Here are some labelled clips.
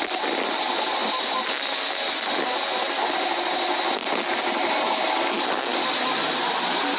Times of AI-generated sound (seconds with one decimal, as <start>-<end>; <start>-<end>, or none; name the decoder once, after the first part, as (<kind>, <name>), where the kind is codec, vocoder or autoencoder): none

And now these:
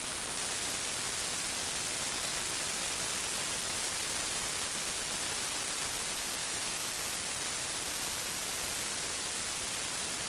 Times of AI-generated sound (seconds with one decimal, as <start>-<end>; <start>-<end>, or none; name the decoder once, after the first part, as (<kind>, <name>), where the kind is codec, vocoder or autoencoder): 6.4-6.9 (autoencoder, DAC-VAE)

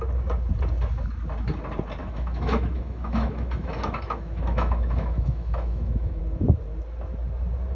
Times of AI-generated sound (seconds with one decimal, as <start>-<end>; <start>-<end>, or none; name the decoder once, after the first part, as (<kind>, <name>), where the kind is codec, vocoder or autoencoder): 2.0-6.2 (autoencoder, DAC-VAE)